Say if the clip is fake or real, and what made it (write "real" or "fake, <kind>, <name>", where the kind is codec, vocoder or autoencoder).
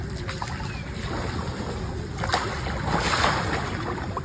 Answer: real